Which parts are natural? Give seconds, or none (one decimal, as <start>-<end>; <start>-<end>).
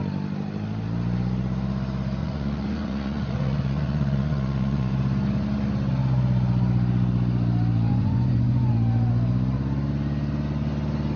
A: 0.0-2.2; 4.9-7.9; 8.7-11.2